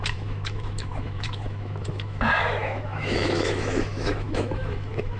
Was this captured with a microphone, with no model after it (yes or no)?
no